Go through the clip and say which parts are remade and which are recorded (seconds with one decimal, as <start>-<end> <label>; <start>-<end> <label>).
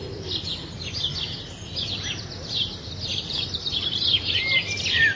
0.0-5.2 recorded